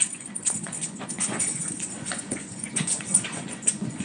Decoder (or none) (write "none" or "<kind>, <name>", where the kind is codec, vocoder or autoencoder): vocoder, Vocos